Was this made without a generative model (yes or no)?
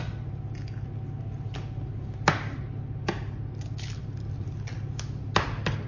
yes